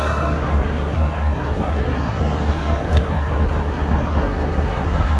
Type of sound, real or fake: fake